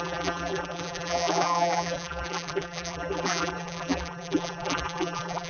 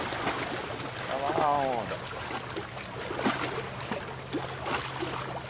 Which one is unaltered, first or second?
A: second